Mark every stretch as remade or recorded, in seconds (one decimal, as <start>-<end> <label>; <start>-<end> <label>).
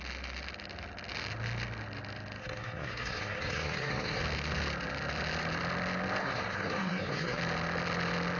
0.0-2.4 recorded; 2.4-4.2 remade; 4.2-6.2 recorded; 6.2-7.4 remade; 7.4-8.4 recorded